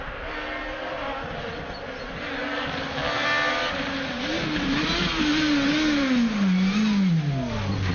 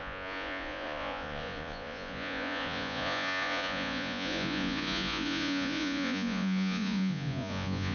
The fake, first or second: second